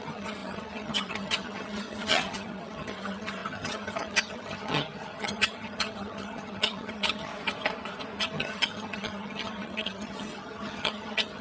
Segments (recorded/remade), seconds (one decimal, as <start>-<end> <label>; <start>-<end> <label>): 0.0-7.3 remade; 7.3-8.2 recorded; 8.2-11.4 remade